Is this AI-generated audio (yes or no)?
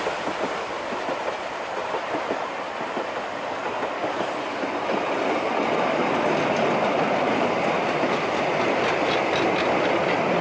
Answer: no